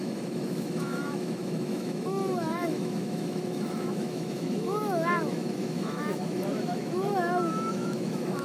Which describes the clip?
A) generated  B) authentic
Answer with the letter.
A